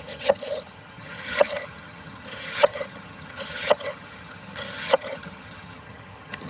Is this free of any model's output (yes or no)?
no